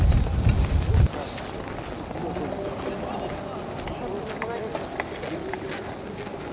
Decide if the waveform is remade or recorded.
recorded